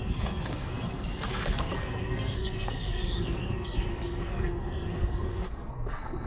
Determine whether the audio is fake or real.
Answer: fake